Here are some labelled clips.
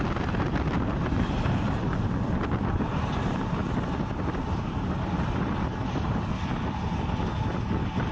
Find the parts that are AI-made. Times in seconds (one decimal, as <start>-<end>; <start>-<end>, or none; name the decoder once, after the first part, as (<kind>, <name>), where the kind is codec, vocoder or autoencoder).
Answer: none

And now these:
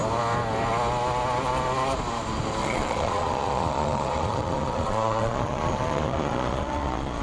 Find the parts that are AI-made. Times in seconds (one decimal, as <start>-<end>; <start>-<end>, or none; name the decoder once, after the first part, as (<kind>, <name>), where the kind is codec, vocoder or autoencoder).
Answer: 2.6-7.2 (vocoder, Vocos)

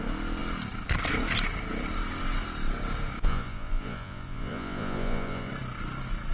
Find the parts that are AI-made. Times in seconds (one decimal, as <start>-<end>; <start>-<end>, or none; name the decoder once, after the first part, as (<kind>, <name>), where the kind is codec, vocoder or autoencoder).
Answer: 3.2-5.5 (vocoder, Vocos)

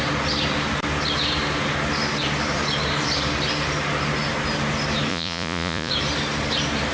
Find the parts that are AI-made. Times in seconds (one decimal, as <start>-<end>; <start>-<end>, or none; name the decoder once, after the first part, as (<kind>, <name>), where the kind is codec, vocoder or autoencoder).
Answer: 5.1-5.9 (vocoder, Vocos)

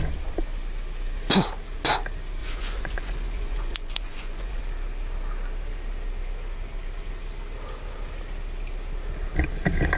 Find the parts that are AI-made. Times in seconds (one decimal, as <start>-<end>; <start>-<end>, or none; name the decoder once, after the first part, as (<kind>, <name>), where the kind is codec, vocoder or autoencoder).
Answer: 2.4-4.6 (vocoder, Vocos)

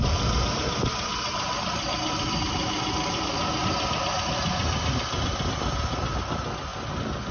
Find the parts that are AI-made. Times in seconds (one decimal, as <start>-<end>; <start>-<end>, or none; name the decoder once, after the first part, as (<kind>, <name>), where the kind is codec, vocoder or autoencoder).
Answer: none